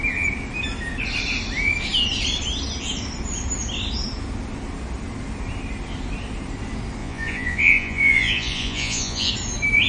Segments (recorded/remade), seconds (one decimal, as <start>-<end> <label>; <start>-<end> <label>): 0.0-7.0 recorded; 7.0-9.3 remade; 9.3-9.9 recorded